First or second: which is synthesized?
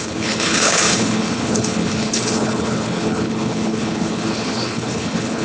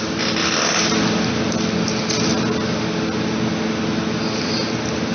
first